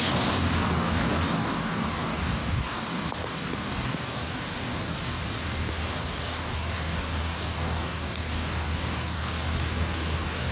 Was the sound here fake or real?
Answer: fake